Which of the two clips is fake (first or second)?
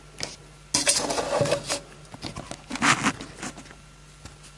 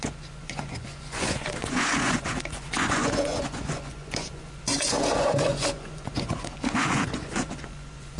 second